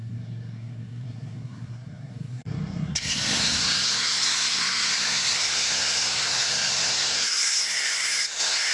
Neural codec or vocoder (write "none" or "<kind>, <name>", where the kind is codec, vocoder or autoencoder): codec, SNAC